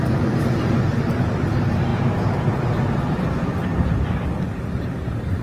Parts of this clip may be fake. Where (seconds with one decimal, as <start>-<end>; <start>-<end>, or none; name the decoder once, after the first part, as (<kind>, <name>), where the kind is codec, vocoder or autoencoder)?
none